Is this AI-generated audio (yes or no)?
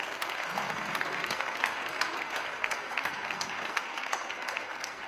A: yes